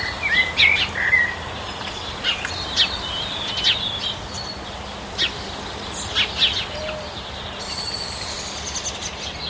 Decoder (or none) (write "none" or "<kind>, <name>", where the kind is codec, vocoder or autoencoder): none